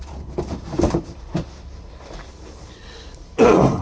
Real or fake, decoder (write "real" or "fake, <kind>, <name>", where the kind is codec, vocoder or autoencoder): fake, vocoder, BigVGAN v2